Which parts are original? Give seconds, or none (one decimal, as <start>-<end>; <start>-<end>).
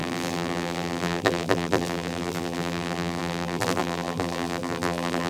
none